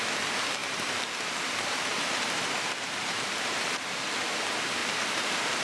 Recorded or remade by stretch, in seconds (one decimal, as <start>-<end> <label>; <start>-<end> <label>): 0.0-0.6 recorded; 0.6-4.0 remade; 4.0-4.8 recorded; 4.8-5.6 remade